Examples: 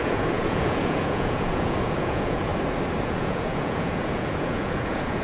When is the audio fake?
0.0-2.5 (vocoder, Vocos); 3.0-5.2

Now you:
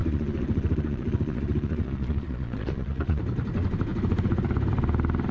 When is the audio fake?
0.0-3.2 (vocoder, Vocos)

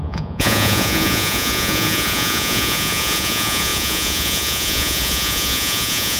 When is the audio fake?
0.0-6.2 (vocoder, Vocos)

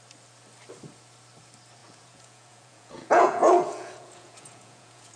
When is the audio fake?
1.8-5.2 (vocoder, Vocos)

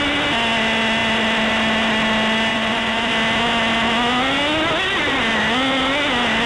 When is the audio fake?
2.5-3.1 (vocoder, Vocos)

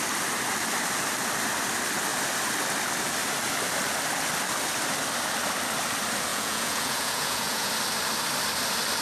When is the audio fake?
6.3-7.7 (vocoder, Vocos)

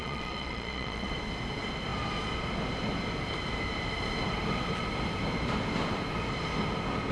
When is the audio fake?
0.0-1.1 (vocoder, Vocos)